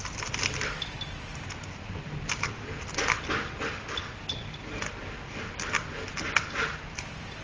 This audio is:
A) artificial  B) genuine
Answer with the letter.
B